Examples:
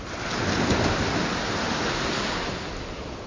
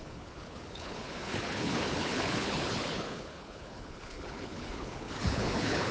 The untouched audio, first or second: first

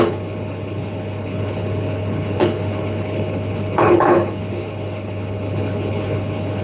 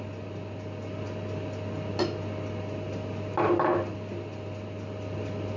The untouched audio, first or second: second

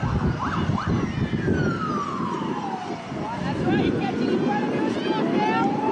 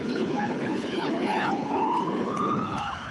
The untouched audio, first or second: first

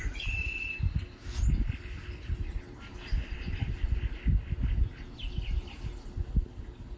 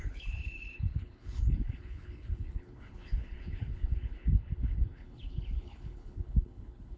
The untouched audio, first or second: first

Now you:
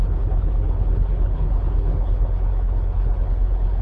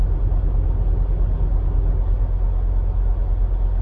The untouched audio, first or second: second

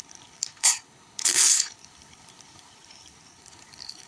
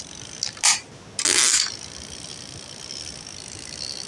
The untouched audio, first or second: second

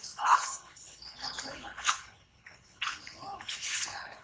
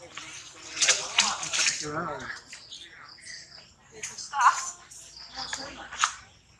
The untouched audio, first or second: second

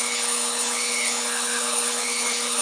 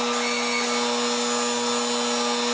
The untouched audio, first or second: second